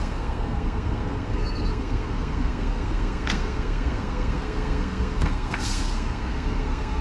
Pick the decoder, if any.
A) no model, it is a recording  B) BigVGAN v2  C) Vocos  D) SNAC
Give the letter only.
D